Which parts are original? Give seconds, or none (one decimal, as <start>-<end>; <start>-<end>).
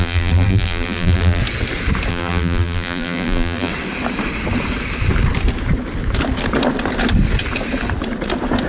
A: 1.4-2.1; 3.7-8.7